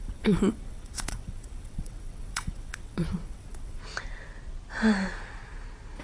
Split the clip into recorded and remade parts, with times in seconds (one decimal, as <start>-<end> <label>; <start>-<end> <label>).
0.0-3.8 remade; 3.8-6.0 recorded